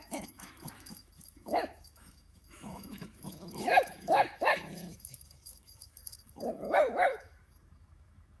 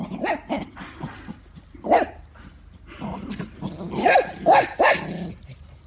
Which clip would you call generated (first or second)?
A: first